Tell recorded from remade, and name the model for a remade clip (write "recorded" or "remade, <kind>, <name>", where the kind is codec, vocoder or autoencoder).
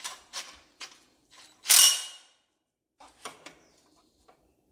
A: remade, vocoder, BigVGAN v2